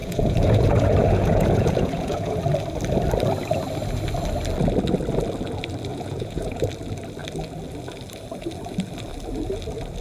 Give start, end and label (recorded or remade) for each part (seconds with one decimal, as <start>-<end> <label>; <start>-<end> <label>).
0.0-2.4 remade; 2.4-5.9 recorded; 5.9-6.6 remade; 6.6-10.0 recorded